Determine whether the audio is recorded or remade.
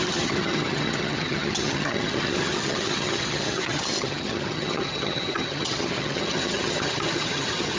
remade